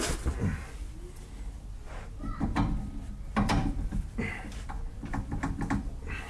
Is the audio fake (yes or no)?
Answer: no